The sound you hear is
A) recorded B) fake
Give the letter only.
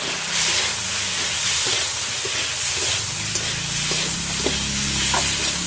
A